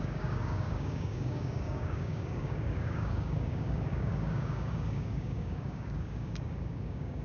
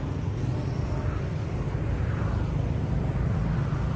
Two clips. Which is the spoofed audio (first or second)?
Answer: first